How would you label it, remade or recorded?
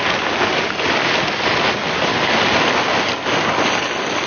recorded